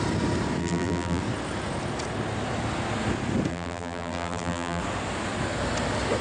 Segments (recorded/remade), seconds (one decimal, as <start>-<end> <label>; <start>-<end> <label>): 0.0-0.6 recorded; 0.6-1.2 remade; 1.2-3.5 recorded; 3.5-4.8 remade; 4.8-6.2 recorded